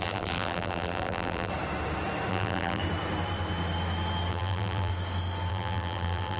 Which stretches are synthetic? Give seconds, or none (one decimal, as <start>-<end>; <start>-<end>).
0.0-1.5; 2.3-2.8; 4.3-4.9; 5.5-6.4